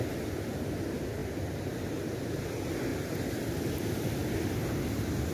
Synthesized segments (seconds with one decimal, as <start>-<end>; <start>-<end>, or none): none